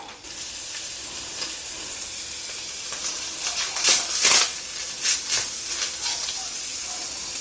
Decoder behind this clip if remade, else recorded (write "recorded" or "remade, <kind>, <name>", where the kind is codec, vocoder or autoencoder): recorded